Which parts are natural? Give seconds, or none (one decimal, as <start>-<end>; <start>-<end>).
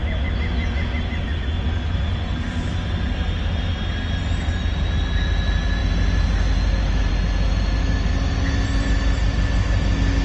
0.0-10.2